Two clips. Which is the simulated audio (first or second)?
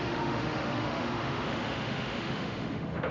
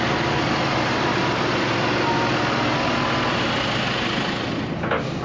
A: first